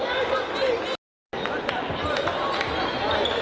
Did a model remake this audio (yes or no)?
no